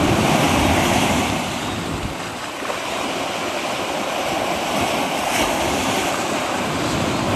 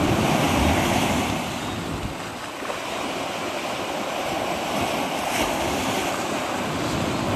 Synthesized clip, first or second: first